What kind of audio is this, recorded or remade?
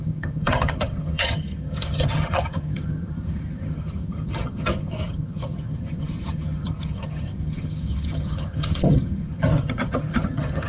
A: remade